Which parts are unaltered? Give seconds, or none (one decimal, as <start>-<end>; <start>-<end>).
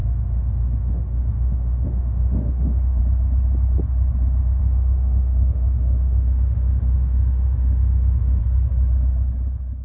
3.0-4.6; 8.4-9.8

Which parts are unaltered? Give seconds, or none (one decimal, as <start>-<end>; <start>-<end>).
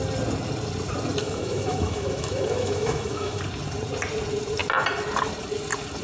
0.0-1.2; 3.4-6.0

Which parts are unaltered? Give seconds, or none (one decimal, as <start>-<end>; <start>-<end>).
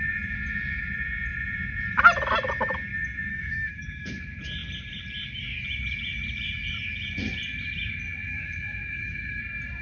0.0-3.3; 4.1-8.3; 9.4-9.8